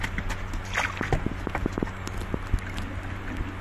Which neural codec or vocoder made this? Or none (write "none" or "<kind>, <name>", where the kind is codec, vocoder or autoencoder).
none